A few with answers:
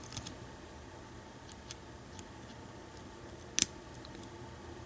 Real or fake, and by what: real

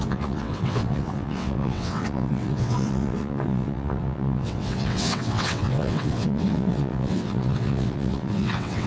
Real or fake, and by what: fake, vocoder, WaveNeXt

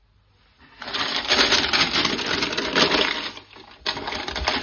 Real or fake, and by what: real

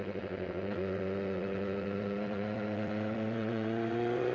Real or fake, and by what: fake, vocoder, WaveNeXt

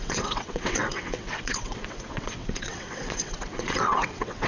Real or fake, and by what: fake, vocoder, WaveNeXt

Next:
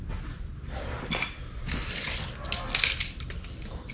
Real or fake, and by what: real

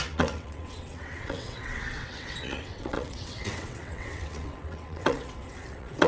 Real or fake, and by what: fake, vocoder, WaveNeXt